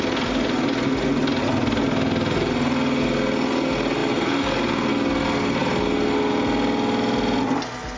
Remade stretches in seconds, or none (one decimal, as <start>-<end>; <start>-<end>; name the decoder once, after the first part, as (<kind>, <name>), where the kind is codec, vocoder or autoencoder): none

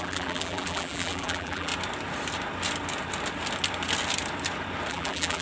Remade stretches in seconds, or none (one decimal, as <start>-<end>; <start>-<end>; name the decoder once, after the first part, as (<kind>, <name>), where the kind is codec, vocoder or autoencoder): 0.0-1.7 (vocoder, BigVGAN v2); 4.9-5.4